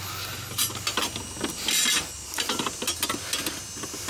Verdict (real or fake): real